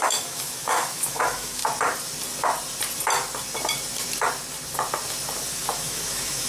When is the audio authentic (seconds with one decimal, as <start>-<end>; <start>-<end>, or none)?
1.6-5.5